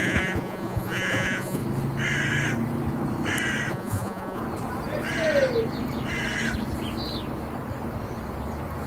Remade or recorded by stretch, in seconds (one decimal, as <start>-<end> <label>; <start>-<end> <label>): 0.0-1.6 remade; 1.6-3.7 recorded; 3.7-4.4 remade; 4.4-8.9 recorded